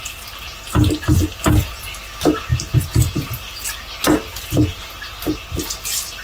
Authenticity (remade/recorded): recorded